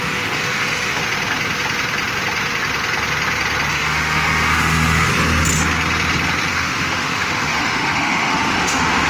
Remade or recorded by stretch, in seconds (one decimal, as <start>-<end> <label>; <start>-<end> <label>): 0.0-1.0 remade; 1.0-3.7 recorded; 3.7-5.1 remade; 5.1-6.5 recorded; 6.5-9.1 remade